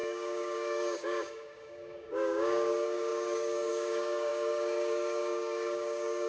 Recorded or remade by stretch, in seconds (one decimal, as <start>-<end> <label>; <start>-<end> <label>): 0.0-6.3 remade